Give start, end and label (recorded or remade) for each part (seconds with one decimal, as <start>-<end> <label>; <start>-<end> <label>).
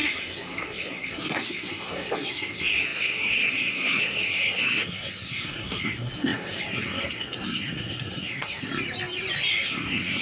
0.0-8.7 remade; 8.7-9.5 recorded; 9.5-10.2 remade